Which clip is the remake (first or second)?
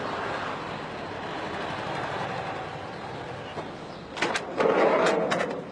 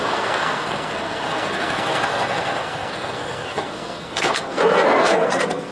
second